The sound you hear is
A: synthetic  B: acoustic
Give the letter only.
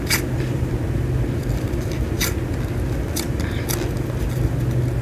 B